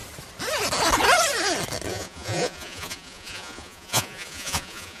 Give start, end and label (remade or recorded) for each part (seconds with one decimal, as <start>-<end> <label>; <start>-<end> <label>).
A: 0.0-1.9 recorded; 1.9-5.0 remade